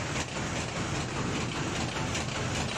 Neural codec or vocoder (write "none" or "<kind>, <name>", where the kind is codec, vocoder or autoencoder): none